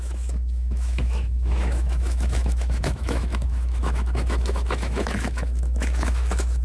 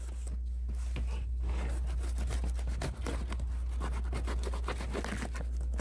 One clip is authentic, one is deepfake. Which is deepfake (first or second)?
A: first